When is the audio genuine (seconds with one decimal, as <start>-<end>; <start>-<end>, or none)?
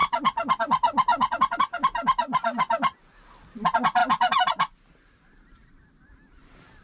0.0-1.1; 1.6-6.8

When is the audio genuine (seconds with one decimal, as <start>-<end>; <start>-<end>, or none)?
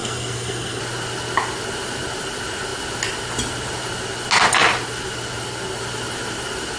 0.8-6.8